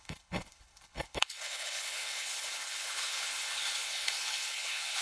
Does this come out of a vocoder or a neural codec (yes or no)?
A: yes